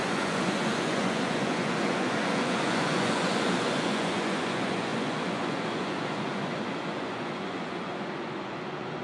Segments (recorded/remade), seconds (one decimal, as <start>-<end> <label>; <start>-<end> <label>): 0.0-9.0 remade